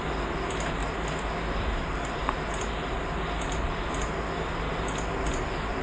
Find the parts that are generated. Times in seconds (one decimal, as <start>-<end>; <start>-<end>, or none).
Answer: none